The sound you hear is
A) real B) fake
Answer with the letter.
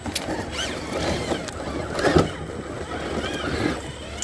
A